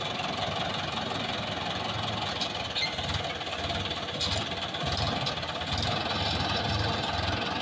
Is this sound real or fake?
real